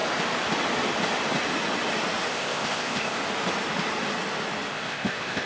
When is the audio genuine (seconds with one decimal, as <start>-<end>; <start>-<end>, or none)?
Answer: 0.0-2.3; 3.2-4.7